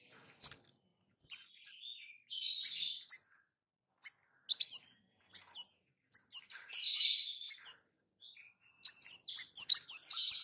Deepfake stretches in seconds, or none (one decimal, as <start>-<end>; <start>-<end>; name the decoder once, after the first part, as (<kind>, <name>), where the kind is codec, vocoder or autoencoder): none